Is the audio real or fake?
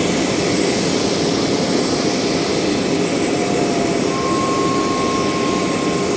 real